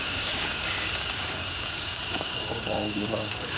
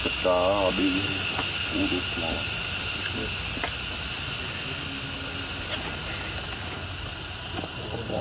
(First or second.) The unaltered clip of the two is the second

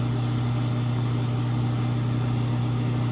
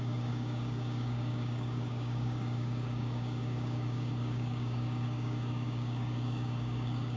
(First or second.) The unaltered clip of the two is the first